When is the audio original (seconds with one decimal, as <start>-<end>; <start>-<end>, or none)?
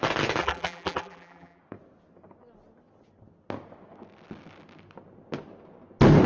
0.0-0.4; 1.6-6.3